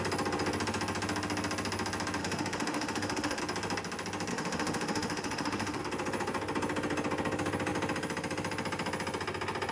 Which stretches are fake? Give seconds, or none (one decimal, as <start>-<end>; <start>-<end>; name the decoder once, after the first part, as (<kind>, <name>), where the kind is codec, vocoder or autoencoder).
2.2-3.4 (autoencoder, DAC-VAE); 4.3-5.8